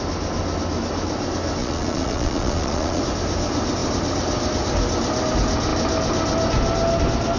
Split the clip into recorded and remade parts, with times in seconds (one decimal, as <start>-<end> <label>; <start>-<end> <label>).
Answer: 0.0-1.6 recorded; 1.6-3.0 remade; 3.0-7.4 recorded